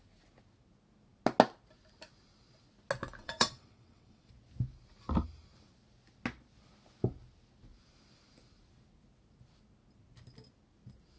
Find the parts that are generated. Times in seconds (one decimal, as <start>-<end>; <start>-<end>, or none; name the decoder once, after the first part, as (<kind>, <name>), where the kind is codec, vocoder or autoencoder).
3.2-4.3 (vocoder, WaveNeXt)